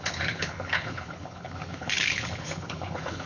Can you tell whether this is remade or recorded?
remade